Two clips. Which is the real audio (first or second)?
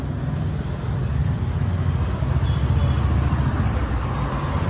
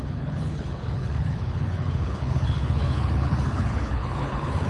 first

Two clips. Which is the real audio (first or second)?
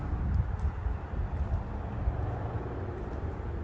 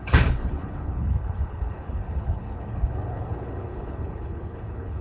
first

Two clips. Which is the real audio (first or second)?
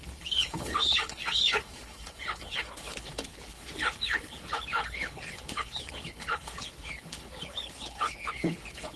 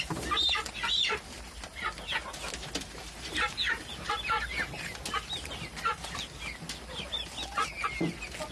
second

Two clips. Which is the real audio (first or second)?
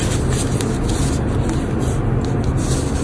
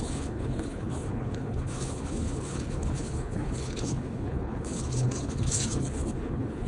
first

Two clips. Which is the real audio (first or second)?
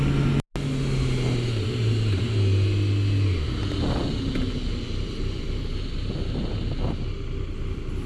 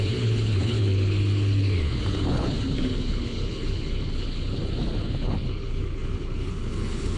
first